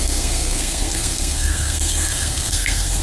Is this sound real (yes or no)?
no